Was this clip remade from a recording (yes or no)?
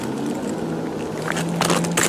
no